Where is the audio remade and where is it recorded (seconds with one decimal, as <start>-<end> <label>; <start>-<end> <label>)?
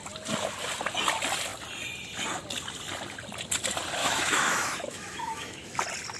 0.0-4.0 recorded; 4.0-5.8 remade; 5.8-6.2 recorded